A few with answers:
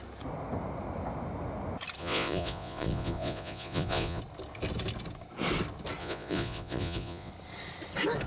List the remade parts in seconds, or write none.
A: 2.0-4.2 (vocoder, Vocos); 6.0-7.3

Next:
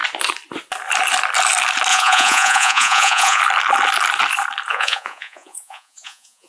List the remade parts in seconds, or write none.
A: 1.9-3.4 (vocoder, Vocos); 4.7-6.5

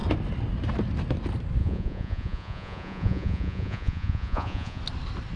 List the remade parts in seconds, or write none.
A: 1.6-4.8 (vocoder, Vocos)

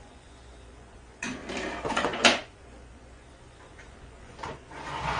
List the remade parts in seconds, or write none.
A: 0.0-1.4 (vocoder, Vocos); 1.9-5.2

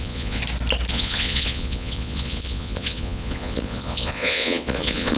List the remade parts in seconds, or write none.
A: 0.0-0.4 (vocoder, Vocos); 0.9-5.2